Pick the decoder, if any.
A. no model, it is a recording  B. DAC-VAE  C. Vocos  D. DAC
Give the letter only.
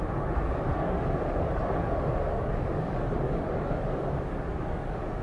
D